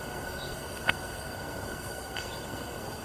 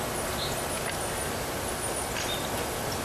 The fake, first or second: first